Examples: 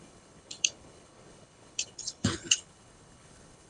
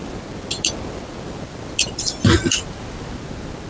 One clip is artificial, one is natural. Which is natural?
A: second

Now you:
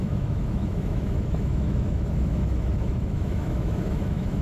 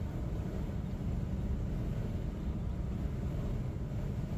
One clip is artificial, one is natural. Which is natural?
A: second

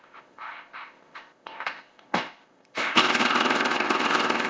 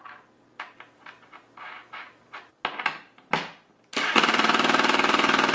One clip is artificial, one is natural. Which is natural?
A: second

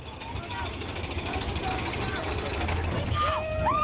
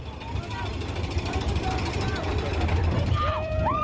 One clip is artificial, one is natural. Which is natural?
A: first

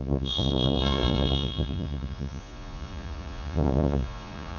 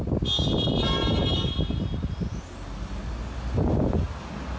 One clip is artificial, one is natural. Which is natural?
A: second